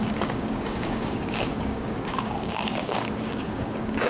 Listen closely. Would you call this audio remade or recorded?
remade